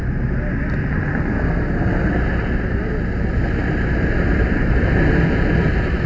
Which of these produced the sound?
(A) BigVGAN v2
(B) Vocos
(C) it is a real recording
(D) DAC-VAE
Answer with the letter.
C